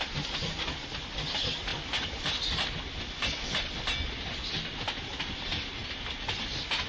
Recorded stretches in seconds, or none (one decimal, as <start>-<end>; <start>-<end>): 0.0-6.9